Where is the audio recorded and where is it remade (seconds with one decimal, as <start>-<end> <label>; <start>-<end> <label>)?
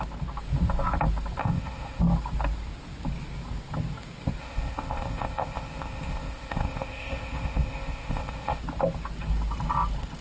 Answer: 0.0-1.4 recorded; 1.4-2.0 remade; 2.0-4.4 recorded; 4.4-8.6 remade; 8.6-10.2 recorded